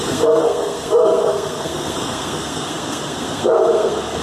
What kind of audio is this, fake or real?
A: fake